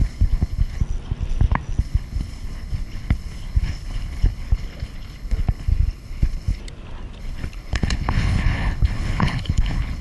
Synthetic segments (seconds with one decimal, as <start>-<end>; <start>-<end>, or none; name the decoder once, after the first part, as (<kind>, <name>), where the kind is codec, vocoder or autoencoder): 0.0-0.8 (codec, HILCodec); 1.8-6.6; 7.2-10.0